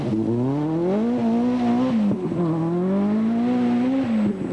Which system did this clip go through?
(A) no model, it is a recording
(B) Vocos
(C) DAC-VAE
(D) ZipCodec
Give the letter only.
A